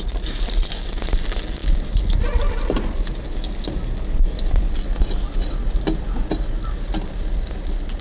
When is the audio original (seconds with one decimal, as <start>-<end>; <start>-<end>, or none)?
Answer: 0.0-8.0